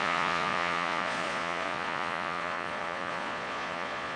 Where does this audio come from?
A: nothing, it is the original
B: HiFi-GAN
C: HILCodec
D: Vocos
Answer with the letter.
D